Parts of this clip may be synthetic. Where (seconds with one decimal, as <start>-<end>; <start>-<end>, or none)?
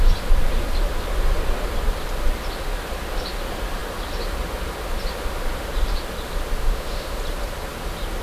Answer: 6.6-7.2